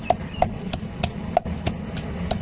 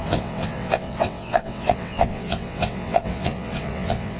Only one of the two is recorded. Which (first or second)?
first